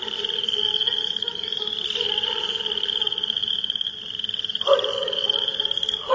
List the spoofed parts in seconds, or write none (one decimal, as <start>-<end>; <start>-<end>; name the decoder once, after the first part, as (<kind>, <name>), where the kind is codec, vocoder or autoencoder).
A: none